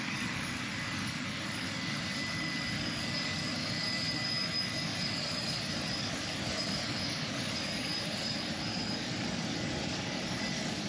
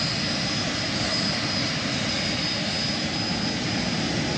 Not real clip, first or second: first